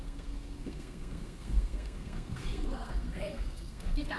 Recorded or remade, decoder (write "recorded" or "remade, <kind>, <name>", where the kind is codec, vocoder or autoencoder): remade, codec, SNAC